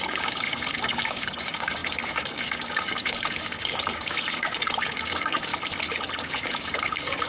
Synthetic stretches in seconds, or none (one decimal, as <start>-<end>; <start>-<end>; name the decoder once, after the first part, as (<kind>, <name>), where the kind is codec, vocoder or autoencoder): 0.0-5.5 (codec, DAC); 6.2-7.3